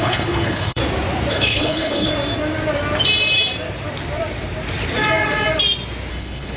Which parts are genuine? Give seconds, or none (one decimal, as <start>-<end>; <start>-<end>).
0.8-1.3; 2.1-6.1